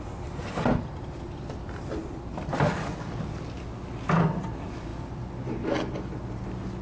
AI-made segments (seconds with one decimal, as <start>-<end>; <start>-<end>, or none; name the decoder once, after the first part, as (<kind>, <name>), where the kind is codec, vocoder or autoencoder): none